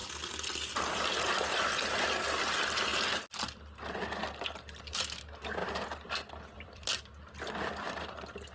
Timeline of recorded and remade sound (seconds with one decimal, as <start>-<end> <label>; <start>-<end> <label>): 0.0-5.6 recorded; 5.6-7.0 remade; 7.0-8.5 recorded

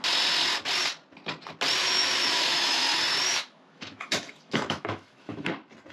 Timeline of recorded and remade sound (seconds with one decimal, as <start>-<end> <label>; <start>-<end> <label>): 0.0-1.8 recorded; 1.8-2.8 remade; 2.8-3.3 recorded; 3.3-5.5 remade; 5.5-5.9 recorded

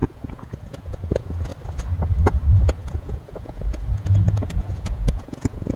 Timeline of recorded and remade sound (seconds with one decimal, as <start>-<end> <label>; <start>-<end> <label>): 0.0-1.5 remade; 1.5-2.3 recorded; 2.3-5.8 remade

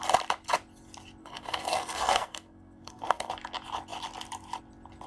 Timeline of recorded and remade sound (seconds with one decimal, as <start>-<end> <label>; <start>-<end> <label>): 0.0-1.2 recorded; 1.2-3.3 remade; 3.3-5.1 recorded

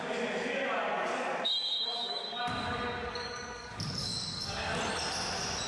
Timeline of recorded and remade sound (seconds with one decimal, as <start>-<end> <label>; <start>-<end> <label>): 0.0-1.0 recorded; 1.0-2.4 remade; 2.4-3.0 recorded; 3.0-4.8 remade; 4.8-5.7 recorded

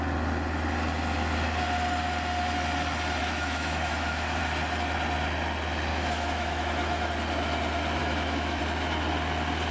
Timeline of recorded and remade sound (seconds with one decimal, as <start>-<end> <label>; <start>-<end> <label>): 0.0-3.2 recorded; 3.2-4.4 remade; 4.4-5.9 recorded; 5.9-7.1 remade; 7.1-8.0 recorded; 8.0-8.6 remade; 8.6-9.7 recorded

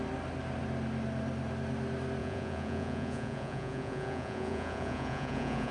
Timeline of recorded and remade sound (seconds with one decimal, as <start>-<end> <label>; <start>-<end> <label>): 0.0-2.2 recorded; 2.2-5.7 remade